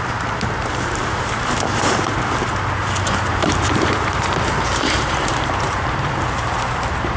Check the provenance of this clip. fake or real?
fake